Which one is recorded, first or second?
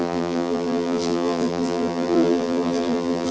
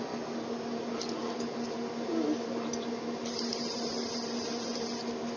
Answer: second